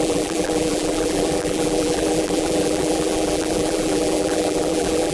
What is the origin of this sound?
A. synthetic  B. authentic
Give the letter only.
A